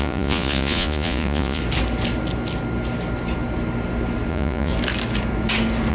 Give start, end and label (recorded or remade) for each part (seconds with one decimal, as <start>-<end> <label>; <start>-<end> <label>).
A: 0.0-1.6 remade; 1.6-4.3 recorded; 4.3-4.7 remade; 4.7-5.9 recorded